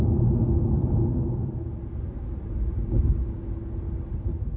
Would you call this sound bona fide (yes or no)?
yes